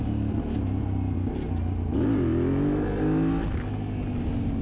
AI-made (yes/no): no